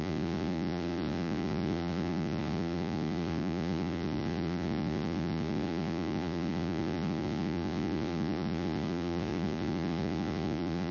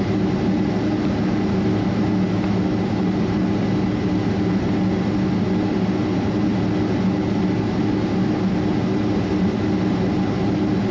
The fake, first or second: first